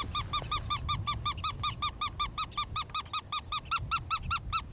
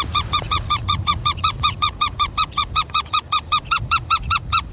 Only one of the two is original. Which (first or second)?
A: first